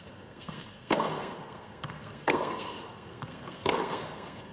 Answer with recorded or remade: remade